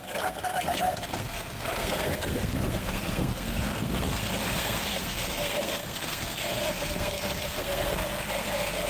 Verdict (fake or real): fake